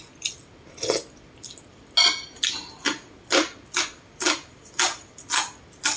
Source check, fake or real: real